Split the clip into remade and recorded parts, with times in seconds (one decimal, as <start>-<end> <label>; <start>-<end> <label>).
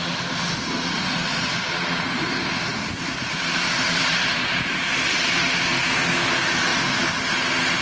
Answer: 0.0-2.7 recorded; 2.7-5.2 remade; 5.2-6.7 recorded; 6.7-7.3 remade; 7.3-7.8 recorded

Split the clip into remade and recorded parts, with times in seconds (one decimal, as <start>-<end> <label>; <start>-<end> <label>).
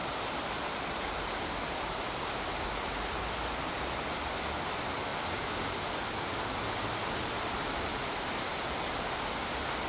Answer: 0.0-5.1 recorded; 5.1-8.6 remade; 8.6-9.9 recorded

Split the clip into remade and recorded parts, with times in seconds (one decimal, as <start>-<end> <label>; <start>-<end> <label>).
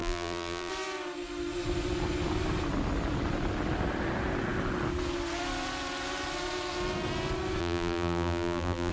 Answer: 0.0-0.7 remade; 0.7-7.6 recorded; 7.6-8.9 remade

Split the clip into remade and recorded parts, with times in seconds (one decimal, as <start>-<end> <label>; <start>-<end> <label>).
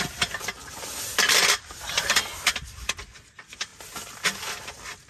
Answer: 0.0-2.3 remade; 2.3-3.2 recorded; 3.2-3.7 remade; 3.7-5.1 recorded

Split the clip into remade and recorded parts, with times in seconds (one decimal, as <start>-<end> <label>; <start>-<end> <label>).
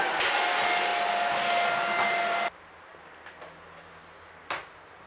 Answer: 0.0-5.1 recorded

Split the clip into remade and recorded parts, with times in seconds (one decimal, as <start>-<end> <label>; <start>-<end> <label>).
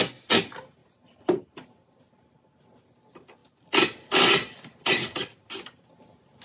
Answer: 0.0-0.8 recorded; 0.8-2.1 remade; 2.1-6.4 recorded